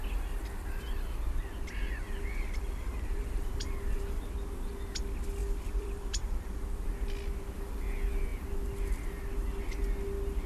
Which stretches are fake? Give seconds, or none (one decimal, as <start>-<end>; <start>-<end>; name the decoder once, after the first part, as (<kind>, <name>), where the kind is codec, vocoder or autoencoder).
2.0-3.6 (vocoder, BigVGAN v2); 5.4-6.6

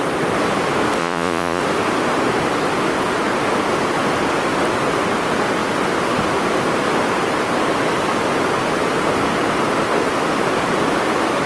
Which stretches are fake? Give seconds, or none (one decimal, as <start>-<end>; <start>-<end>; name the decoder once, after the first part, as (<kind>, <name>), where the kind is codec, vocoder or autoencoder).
1.0-1.6 (vocoder, Vocos)